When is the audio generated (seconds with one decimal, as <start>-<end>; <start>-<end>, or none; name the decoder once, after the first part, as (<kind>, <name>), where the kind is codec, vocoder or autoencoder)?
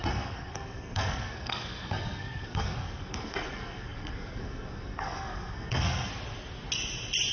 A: 0.0-6.1 (codec, SNAC)